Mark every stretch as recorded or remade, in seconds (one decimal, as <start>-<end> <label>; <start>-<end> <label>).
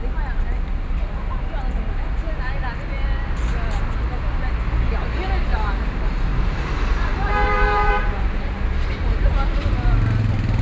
0.0-5.5 recorded; 5.5-8.2 remade; 8.2-10.6 recorded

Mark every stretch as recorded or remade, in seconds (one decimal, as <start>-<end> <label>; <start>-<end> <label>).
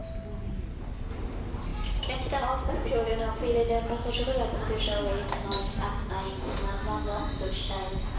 0.0-8.2 recorded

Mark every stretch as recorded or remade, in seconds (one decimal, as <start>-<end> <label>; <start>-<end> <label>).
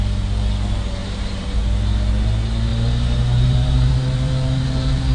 0.0-1.0 recorded; 1.0-1.6 remade; 1.6-2.7 recorded; 2.7-5.1 remade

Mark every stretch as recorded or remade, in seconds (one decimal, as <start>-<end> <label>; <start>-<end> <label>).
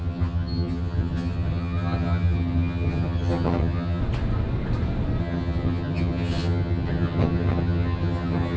0.0-4.0 remade; 4.0-5.2 recorded; 5.2-8.6 remade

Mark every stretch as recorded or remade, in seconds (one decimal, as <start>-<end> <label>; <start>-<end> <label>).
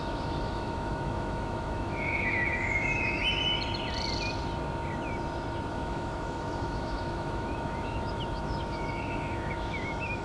0.0-3.2 remade; 3.2-5.7 recorded; 5.7-10.2 remade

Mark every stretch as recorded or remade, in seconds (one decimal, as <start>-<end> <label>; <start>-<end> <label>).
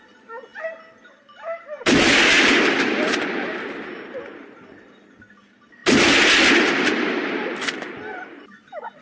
0.0-9.0 recorded